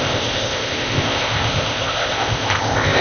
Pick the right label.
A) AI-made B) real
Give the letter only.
A